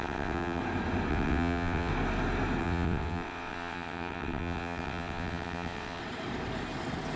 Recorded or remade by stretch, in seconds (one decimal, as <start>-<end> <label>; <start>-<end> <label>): 0.0-0.6 remade; 0.6-1.1 recorded; 1.1-1.9 remade; 1.9-2.6 recorded; 2.6-6.0 remade; 6.0-7.2 recorded